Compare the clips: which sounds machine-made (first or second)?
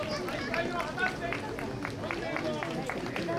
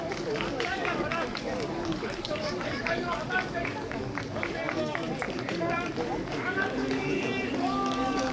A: second